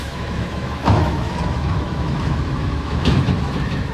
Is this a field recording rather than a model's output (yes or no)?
no